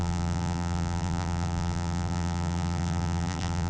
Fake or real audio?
fake